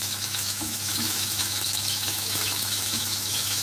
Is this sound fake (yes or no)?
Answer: yes